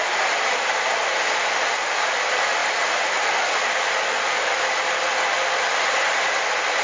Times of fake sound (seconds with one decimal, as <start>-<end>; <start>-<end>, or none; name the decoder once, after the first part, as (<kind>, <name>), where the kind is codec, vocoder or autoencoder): none

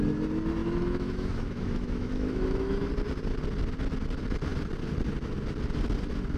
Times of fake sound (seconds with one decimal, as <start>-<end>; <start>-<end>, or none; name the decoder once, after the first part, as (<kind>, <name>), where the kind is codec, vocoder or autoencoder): 0.6-2.9 (autoencoder, DAC-VAE)

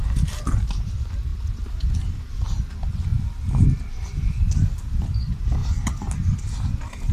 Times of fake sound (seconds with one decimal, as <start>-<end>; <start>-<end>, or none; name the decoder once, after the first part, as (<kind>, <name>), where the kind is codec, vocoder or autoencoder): none

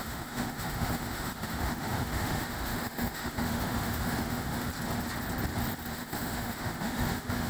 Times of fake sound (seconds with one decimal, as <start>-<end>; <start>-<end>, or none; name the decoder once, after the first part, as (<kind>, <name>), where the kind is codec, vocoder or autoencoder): 0.0-4.7 (autoencoder, DAC-VAE); 5.9-7.5

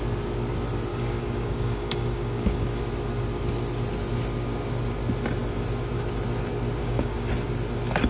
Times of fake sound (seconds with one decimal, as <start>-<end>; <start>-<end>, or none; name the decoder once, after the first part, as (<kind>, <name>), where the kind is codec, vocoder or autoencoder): 0.9-2.8 (codec, DAC); 6.8-7.3

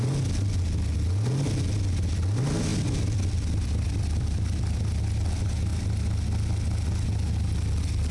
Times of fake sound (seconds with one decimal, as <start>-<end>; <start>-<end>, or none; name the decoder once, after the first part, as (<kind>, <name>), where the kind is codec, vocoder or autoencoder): 2.7-5.0 (vocoder, BigVGAN v2)

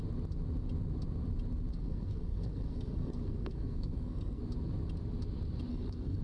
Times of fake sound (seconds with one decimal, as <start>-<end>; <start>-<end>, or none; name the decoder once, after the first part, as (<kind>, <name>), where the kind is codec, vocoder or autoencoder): 1.7-4.4 (codec, SNAC); 5.7-6.2